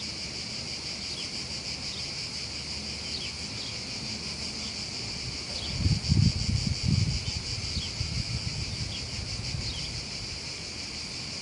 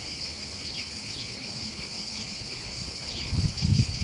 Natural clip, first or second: first